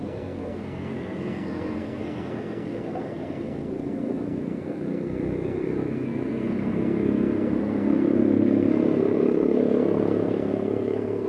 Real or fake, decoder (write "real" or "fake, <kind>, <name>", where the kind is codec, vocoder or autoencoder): fake, codec, SNAC